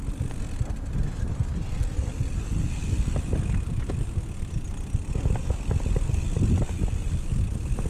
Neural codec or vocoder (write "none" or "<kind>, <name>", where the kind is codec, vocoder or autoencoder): none